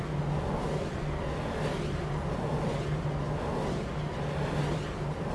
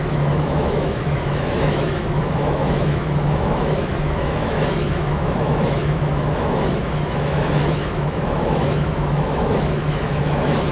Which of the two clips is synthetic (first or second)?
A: second